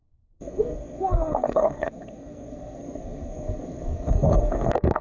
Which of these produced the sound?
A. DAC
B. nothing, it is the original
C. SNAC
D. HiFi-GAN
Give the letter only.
C